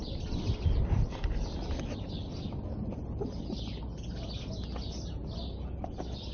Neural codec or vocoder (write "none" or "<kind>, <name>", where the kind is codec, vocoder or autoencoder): none